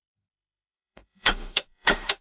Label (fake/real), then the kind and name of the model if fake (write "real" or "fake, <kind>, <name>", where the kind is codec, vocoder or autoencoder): fake, autoencoder, DAC-VAE